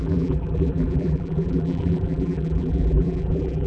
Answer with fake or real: fake